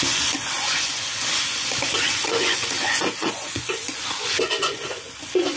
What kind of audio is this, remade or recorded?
remade